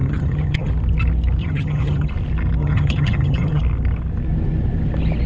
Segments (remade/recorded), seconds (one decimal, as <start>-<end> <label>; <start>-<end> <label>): 0.0-0.7 remade; 0.7-1.4 recorded; 1.4-2.1 remade; 2.1-2.6 recorded; 2.6-3.6 remade; 3.6-5.3 recorded